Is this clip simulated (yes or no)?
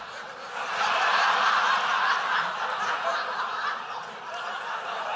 no